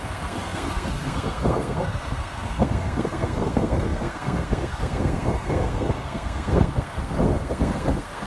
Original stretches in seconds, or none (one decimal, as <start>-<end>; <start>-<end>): none